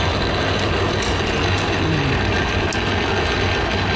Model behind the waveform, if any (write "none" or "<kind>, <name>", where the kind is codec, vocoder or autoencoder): none